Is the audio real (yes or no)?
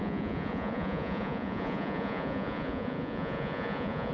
no